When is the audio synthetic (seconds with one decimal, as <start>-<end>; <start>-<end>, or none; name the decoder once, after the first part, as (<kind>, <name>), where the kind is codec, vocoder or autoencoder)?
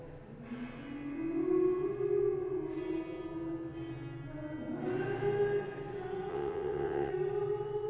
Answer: 6.3-7.1 (vocoder, WaveNeXt)